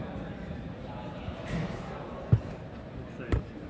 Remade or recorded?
remade